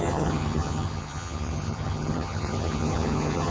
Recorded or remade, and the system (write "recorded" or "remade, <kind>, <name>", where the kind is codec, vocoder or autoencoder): remade, vocoder, HiFi-GAN